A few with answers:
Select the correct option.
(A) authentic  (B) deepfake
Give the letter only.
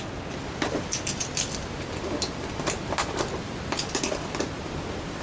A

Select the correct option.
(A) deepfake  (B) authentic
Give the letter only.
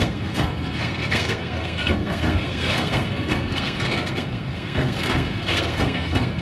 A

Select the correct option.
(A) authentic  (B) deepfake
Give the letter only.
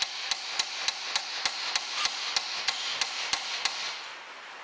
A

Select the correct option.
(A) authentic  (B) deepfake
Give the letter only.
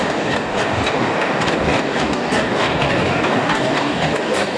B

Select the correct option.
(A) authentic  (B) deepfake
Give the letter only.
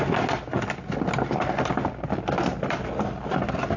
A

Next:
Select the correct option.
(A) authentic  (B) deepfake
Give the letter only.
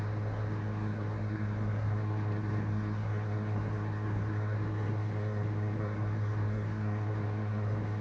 B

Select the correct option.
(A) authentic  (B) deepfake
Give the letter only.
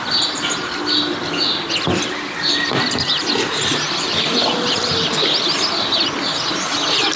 A